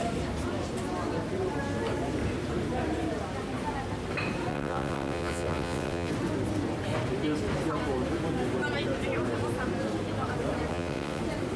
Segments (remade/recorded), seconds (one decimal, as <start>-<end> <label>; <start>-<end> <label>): 0.0-4.5 recorded; 4.5-6.1 remade; 6.1-10.7 recorded; 10.7-11.2 remade; 11.2-11.6 recorded